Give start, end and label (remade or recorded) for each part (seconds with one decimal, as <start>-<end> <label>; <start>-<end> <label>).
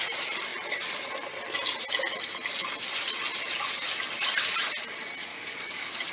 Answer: 0.0-5.3 recorded; 5.3-6.1 remade